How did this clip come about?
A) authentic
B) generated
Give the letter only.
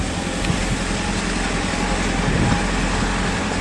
A